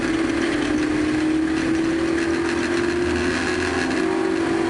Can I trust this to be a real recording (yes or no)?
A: yes